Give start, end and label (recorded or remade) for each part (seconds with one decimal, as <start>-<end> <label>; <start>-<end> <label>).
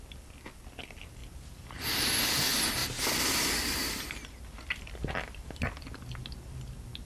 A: 0.0-7.1 recorded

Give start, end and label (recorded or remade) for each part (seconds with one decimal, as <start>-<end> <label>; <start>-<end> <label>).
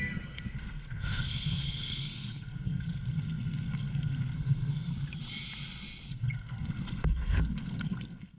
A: 0.0-4.9 remade; 4.9-6.1 recorded; 6.1-8.4 remade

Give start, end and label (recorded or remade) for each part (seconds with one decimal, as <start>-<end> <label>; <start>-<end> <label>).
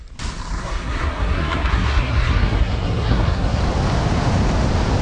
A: 0.0-0.6 recorded; 0.6-3.6 remade; 3.6-5.0 recorded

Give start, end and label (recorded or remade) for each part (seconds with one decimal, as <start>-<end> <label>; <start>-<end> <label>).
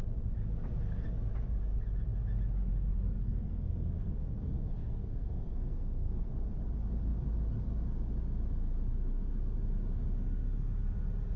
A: 0.0-3.2 recorded; 3.2-6.3 remade; 6.3-11.4 recorded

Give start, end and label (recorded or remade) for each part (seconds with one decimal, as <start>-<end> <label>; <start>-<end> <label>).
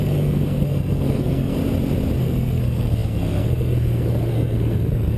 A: 0.0-1.6 remade; 1.6-2.2 recorded; 2.2-5.2 remade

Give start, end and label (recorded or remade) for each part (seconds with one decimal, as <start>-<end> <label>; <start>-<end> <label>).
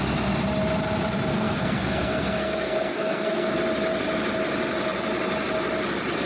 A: 0.0-1.3 recorded; 1.3-3.5 remade; 3.5-6.3 recorded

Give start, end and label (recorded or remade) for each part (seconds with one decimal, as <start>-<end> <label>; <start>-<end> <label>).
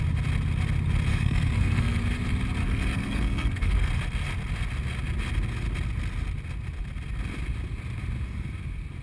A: 0.0-1.1 recorded; 1.1-2.0 remade; 2.0-2.6 recorded; 2.6-3.9 remade; 3.9-9.0 recorded